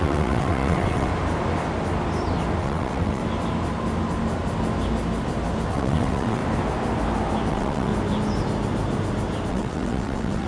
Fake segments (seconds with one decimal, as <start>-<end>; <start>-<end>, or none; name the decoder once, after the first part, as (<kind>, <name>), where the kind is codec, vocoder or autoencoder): 0.0-1.1 (vocoder, WaveNeXt); 2.6-3.2; 5.7-6.4; 7.5-7.9; 9.5-10.5